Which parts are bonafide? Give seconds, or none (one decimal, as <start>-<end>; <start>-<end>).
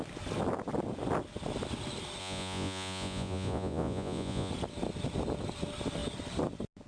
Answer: 0.0-2.2; 4.5-6.9